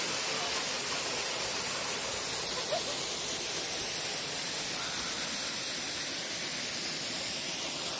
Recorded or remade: recorded